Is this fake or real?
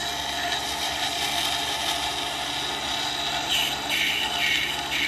real